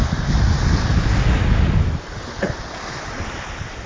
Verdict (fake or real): real